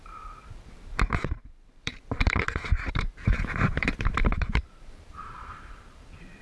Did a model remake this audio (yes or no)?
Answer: yes